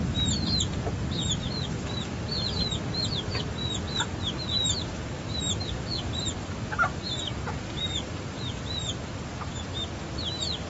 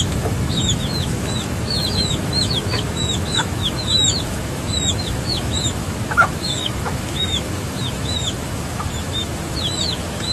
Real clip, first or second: first